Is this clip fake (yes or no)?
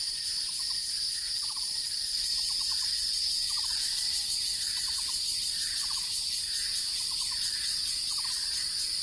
yes